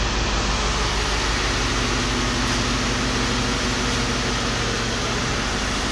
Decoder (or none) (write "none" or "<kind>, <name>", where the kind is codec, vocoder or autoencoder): none